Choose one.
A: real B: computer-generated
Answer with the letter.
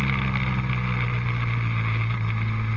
A